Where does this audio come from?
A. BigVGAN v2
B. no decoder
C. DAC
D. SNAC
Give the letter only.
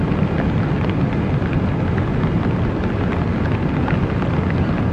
B